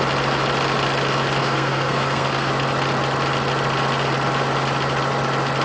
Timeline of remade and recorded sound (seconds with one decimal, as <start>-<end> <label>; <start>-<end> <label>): 0.0-1.4 recorded; 1.4-2.5 remade; 2.5-5.6 recorded